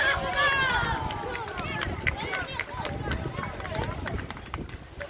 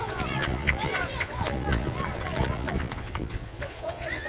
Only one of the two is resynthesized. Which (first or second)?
second